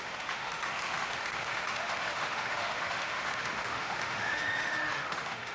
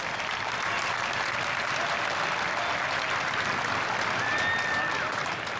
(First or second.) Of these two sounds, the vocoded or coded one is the first